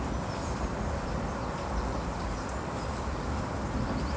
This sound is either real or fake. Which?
real